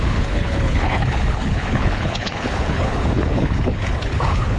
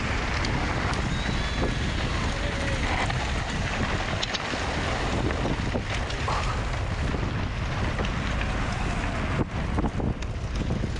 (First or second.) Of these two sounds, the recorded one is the second